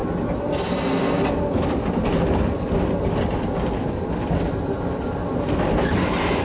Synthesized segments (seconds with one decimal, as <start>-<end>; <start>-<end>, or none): none